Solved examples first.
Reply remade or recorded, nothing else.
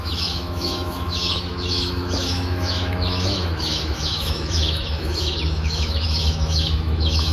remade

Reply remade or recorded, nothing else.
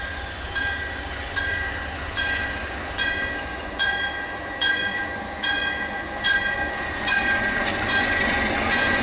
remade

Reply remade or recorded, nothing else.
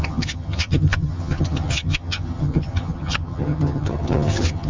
remade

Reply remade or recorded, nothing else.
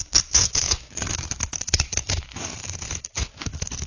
remade